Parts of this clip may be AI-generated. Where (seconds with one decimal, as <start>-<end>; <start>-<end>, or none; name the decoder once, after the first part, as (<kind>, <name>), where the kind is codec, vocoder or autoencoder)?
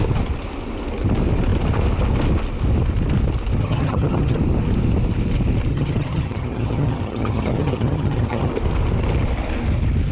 3.6-4.4 (vocoder, HiFi-GAN); 5.7-8.5